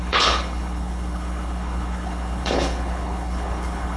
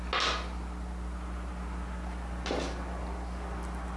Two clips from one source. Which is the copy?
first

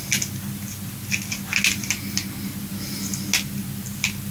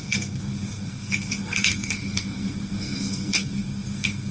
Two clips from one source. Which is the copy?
second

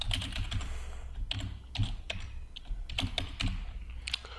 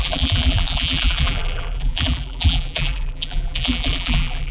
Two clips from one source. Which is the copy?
second